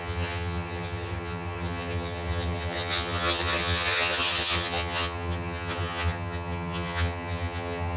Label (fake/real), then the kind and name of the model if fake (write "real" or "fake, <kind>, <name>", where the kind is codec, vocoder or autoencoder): fake, vocoder, HiFi-GAN